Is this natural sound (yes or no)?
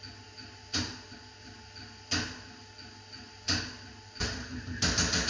yes